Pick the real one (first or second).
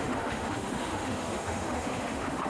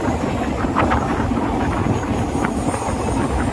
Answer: second